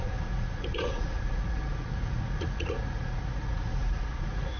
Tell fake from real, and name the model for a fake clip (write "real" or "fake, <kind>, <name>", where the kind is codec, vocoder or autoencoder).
fake, vocoder, Vocos